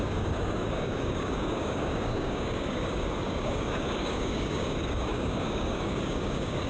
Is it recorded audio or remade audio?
remade